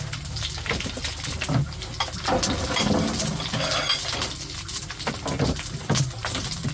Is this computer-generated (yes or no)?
no